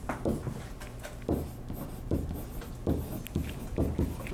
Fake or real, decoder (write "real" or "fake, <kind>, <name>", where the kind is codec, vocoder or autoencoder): real